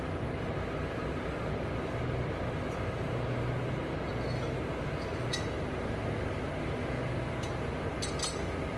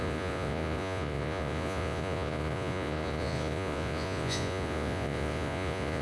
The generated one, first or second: second